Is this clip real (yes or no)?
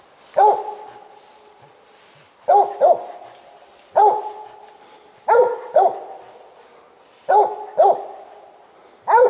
yes